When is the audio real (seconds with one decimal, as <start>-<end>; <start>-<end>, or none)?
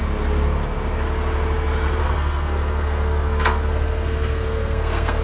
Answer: 0.0-2.0